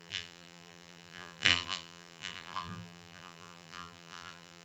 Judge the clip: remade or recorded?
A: remade